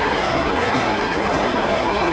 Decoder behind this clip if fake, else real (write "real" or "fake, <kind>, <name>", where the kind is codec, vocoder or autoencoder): fake, codec, SNAC